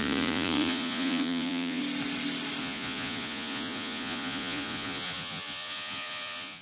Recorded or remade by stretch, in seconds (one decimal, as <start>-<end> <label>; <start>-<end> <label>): 0.0-1.8 remade; 1.8-2.6 recorded; 2.6-6.6 remade